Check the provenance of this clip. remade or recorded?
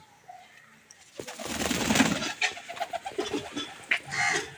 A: recorded